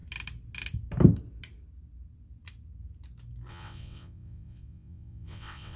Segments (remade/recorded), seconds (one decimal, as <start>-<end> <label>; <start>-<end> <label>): 0.0-3.5 recorded; 3.5-5.8 remade